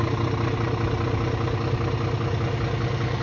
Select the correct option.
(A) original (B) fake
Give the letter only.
A